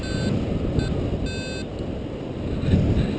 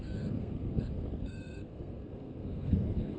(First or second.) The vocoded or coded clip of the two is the second